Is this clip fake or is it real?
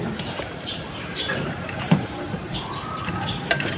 fake